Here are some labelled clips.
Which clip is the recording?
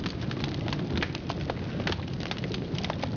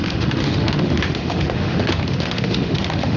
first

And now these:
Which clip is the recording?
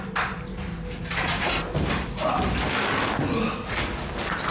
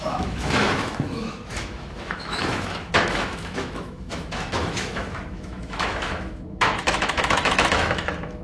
first